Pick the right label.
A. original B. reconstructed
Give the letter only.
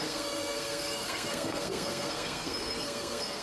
B